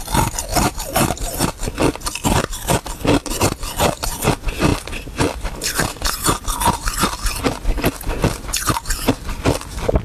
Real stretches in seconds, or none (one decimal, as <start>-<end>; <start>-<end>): 0.0-0.5; 1.5-10.0